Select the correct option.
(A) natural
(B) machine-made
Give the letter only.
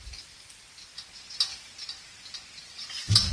A